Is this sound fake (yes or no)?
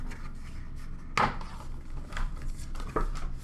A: no